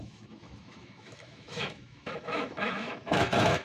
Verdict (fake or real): fake